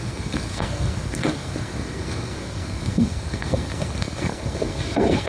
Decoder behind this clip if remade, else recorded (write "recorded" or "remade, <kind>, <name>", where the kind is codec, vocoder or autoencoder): remade, codec, SNAC